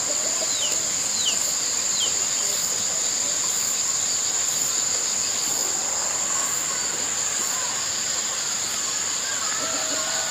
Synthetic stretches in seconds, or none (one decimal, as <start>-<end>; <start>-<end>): none